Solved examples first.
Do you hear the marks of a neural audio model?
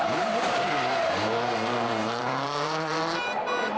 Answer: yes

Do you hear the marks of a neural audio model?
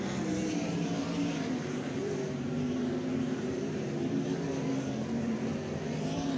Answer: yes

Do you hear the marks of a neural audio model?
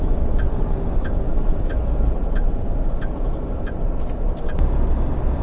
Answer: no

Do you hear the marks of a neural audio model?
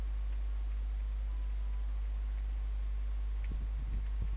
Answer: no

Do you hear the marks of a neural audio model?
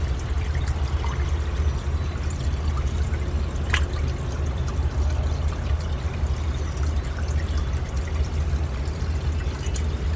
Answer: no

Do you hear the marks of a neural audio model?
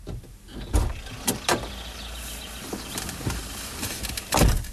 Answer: no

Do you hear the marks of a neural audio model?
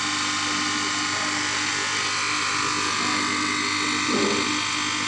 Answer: no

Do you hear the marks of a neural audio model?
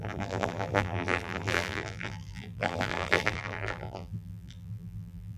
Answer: yes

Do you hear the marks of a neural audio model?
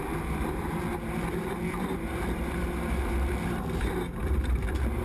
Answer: yes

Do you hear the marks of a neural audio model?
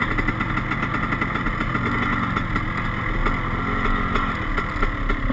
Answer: no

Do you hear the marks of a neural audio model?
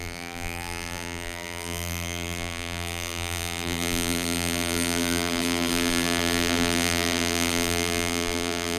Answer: yes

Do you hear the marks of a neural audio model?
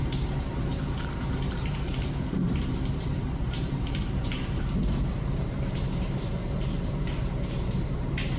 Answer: yes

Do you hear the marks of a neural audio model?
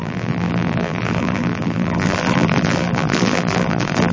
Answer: yes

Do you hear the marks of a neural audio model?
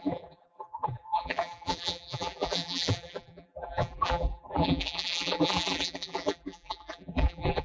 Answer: yes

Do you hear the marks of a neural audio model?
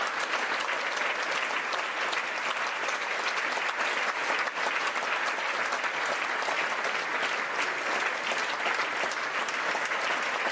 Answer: no